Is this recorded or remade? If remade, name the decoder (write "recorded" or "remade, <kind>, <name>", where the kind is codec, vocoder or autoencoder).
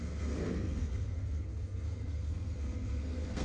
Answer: remade, codec, SNAC